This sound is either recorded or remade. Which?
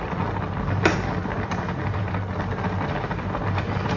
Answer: recorded